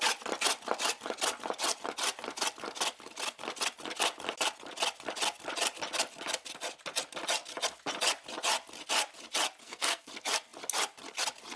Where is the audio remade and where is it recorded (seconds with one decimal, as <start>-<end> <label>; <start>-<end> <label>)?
0.0-9.6 recorded; 9.6-10.1 remade; 10.1-11.6 recorded